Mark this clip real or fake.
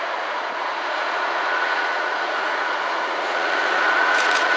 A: fake